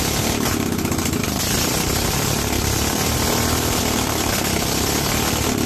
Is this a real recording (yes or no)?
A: yes